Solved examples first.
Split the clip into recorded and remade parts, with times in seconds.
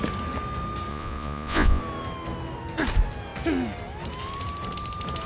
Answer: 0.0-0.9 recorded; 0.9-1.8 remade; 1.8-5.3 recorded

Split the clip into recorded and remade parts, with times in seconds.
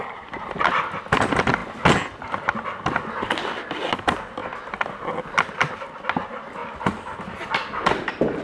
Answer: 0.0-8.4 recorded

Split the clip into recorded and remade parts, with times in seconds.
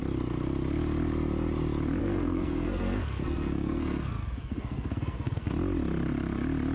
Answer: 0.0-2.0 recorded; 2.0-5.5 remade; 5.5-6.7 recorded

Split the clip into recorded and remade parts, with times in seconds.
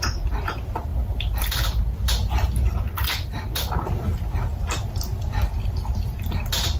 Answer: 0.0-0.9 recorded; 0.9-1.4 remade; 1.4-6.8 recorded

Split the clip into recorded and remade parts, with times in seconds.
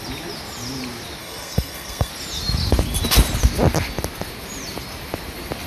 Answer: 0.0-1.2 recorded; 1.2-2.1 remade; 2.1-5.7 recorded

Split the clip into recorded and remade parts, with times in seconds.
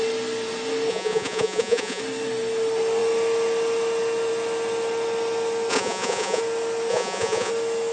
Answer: 0.0-0.9 recorded; 0.9-2.0 remade; 2.0-5.7 recorded; 5.7-6.4 remade; 6.4-6.9 recorded; 6.9-7.5 remade; 7.5-7.9 recorded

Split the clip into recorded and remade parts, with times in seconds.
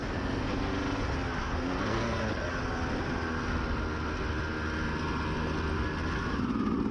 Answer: 0.0-0.7 remade; 0.7-1.4 recorded; 1.4-2.2 remade; 2.2-6.9 recorded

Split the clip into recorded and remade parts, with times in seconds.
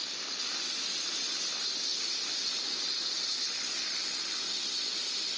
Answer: 0.0-5.4 recorded